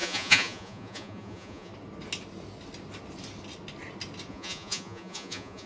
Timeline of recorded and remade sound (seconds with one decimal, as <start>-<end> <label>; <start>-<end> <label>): 0.0-1.7 remade; 1.7-4.3 recorded; 4.3-5.7 remade